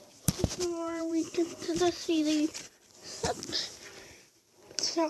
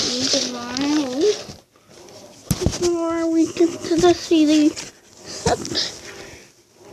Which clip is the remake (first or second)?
first